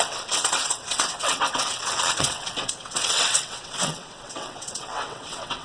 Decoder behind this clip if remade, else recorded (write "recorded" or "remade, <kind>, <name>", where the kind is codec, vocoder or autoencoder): remade, vocoder, WaveNeXt